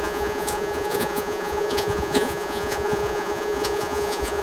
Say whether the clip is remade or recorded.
remade